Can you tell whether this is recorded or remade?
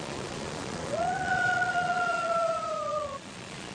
remade